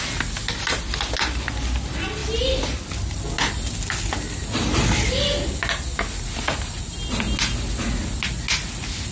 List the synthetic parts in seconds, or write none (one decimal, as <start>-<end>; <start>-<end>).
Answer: none